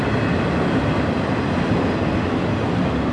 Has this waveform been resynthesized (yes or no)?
no